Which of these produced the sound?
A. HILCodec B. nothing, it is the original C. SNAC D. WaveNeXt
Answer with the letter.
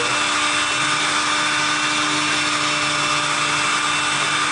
B